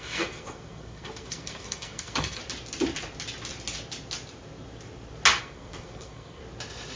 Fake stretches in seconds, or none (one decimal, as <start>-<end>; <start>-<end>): 0.0-2.4; 5.4-6.4